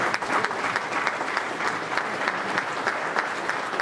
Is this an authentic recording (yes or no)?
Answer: yes